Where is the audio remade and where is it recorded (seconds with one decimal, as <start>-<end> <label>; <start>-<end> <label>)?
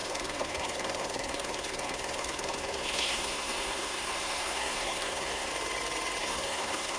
0.0-5.5 remade; 5.5-6.2 recorded; 6.2-7.0 remade